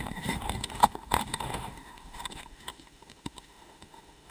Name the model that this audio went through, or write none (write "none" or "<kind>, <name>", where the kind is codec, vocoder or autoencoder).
autoencoder, DAC-VAE